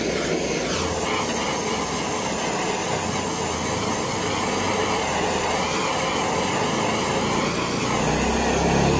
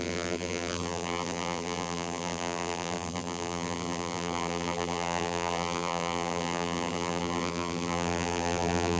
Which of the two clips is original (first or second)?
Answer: first